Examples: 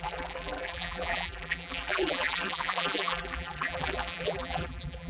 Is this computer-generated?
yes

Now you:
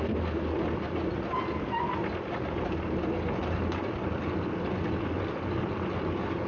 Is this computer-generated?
no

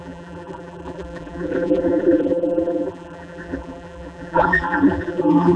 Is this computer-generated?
yes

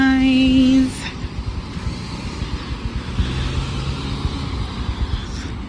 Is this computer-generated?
no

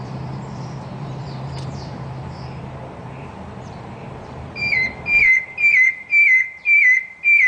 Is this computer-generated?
yes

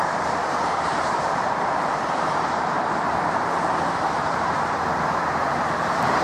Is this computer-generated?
yes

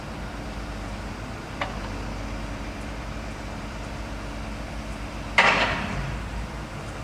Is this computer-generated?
yes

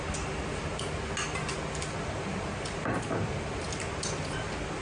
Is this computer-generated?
no